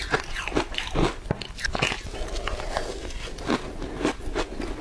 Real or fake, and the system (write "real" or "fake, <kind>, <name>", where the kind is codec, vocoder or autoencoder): real